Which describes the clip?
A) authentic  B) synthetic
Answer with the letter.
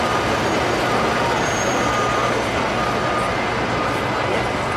A